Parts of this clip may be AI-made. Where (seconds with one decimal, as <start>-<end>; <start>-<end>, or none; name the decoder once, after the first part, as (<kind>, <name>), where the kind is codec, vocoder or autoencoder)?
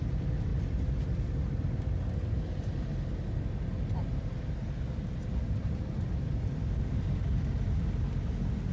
5.6-7.6 (vocoder, BigVGAN v2)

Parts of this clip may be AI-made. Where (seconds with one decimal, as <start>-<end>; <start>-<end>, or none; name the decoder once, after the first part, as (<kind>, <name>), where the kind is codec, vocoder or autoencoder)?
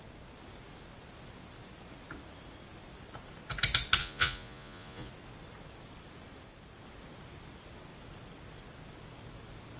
4.0-5.1 (vocoder, Vocos)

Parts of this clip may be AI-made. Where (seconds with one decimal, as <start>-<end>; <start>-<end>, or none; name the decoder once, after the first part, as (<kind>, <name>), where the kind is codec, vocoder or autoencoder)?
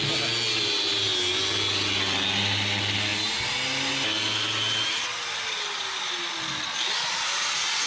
none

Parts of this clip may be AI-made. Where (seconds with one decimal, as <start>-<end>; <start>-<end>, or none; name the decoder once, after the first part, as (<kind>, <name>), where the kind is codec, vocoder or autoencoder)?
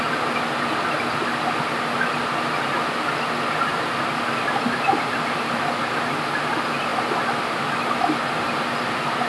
3.7-5.6 (vocoder, BigVGAN v2); 6.9-7.7